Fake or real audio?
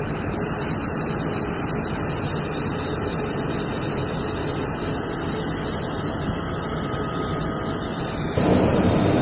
real